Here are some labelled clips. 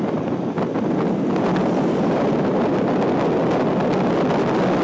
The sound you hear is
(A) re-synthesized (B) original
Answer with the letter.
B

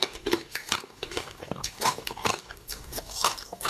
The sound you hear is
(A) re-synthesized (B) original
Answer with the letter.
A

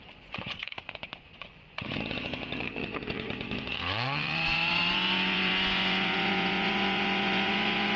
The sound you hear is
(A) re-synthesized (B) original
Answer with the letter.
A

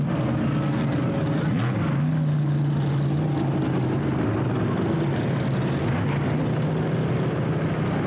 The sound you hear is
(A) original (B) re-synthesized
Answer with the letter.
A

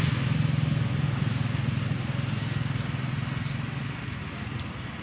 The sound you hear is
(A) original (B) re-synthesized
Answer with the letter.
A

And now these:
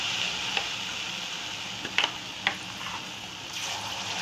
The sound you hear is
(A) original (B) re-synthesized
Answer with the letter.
A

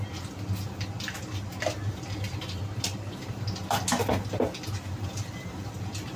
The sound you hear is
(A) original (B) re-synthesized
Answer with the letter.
A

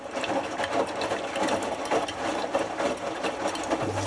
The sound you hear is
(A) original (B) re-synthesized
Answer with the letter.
A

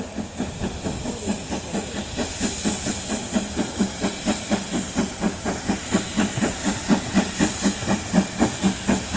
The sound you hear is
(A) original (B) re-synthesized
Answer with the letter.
A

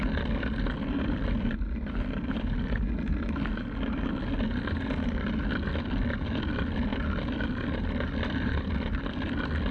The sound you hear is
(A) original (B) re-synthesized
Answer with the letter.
A